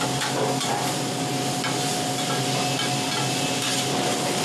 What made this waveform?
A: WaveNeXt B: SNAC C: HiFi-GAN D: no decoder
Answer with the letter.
D